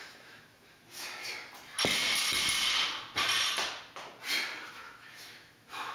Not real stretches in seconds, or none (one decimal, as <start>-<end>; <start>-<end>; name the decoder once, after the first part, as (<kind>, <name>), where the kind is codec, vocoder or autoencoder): 0.0-1.2 (autoencoder, DAC-VAE); 4.7-5.9